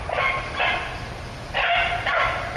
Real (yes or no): yes